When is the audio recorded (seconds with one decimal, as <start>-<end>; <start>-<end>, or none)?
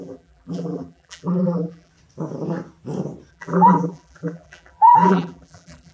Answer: 1.9-3.3